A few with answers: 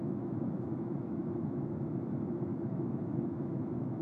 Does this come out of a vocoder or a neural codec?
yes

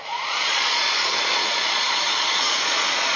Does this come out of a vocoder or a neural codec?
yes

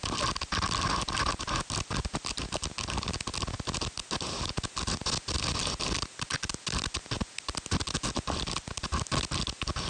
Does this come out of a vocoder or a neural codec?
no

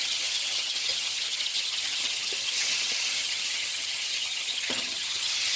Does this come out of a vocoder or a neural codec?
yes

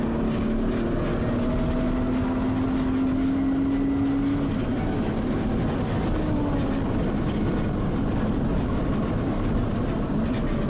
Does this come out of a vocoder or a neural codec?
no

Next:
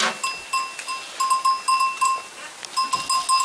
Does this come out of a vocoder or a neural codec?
no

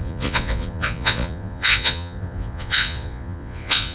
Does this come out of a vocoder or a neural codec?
yes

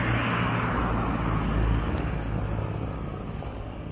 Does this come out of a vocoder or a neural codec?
no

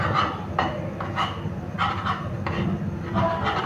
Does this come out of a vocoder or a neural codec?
no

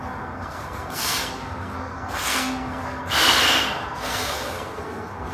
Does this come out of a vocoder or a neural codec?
yes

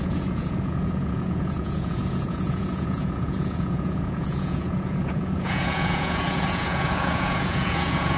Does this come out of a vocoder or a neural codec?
yes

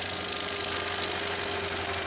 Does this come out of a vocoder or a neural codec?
no